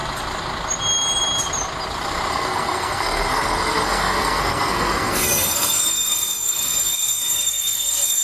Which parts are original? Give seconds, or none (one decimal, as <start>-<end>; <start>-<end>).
0.0-2.3